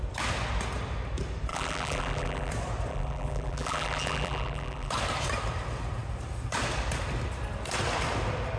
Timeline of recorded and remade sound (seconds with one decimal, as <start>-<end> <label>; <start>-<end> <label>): 0.0-1.5 recorded; 1.5-2.5 remade; 2.5-2.9 recorded; 2.9-4.9 remade; 4.9-8.6 recorded